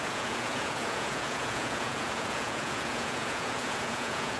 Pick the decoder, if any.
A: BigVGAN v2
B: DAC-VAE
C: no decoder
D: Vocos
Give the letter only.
D